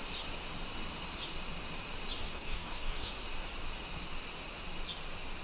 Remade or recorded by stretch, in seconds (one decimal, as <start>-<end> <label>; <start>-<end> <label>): 0.0-2.2 recorded; 2.2-3.1 remade; 3.1-5.4 recorded